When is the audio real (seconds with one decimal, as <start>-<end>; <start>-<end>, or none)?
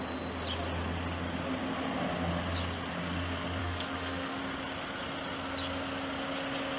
0.0-3.6; 4.4-6.8